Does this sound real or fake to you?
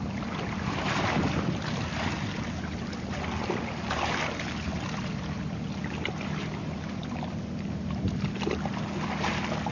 real